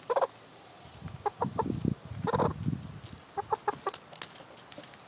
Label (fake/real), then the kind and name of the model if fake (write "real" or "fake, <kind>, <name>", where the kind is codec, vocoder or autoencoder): real